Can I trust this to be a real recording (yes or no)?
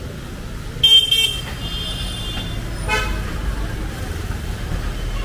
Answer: yes